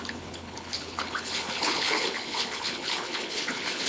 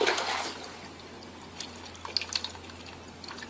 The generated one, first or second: first